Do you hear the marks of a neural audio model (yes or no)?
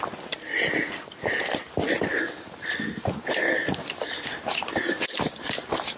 no